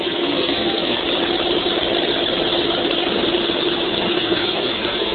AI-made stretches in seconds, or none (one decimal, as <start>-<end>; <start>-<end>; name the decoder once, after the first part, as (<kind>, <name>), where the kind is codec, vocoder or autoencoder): 0.0-1.0 (codec, SNAC); 4.1-5.1